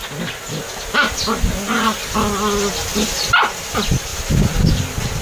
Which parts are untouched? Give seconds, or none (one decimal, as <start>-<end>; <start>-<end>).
0.0-5.2